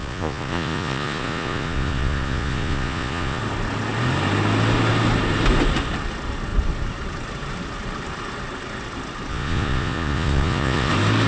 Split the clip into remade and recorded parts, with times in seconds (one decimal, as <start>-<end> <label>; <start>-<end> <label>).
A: 0.0-3.4 remade; 3.4-9.3 recorded; 9.3-10.9 remade; 10.9-11.3 recorded